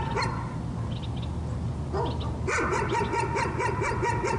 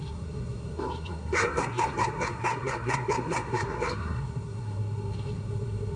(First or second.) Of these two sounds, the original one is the first